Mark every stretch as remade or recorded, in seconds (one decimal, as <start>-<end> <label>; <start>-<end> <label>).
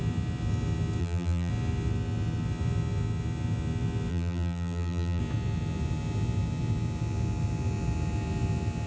0.0-1.0 recorded; 1.0-1.5 remade; 1.5-4.1 recorded; 4.1-5.2 remade; 5.2-8.9 recorded